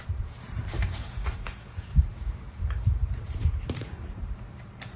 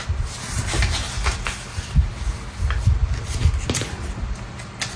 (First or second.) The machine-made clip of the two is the first